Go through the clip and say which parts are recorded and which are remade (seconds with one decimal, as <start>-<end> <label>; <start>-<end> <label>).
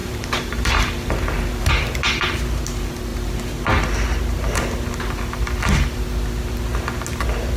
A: 0.0-1.7 remade; 1.7-7.6 recorded